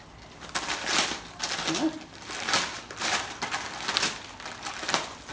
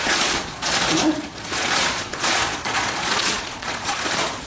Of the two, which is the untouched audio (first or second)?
first